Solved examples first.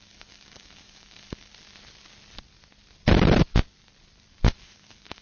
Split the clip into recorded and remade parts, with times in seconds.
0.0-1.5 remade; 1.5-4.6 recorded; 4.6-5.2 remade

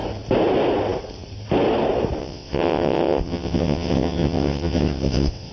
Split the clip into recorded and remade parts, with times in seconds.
0.0-2.2 recorded; 2.2-5.5 remade

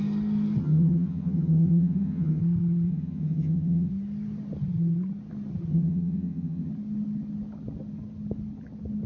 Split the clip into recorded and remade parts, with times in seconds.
0.0-0.6 recorded; 0.6-2.4 remade; 2.4-2.9 recorded; 2.9-3.9 remade; 3.9-5.7 recorded; 5.7-6.7 remade; 6.7-9.1 recorded